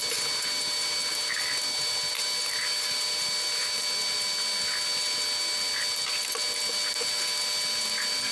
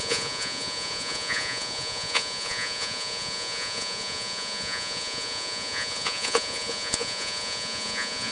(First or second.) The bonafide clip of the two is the first